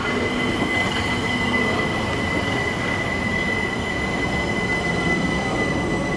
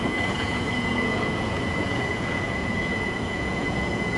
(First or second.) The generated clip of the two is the second